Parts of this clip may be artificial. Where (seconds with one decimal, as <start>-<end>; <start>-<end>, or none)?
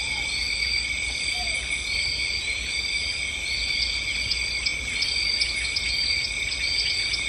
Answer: none